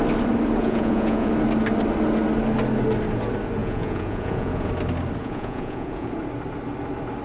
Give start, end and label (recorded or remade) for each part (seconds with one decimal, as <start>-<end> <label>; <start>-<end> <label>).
0.0-0.6 recorded; 0.6-1.3 remade; 1.3-3.6 recorded; 3.6-4.7 remade; 4.7-5.2 recorded; 5.2-6.1 remade; 6.1-7.2 recorded